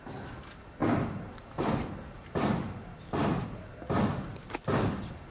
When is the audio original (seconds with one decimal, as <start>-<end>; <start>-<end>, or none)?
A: 0.0-0.8; 3.8-5.3